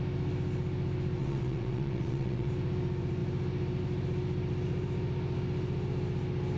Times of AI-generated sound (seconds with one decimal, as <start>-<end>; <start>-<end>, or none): 1.2-2.5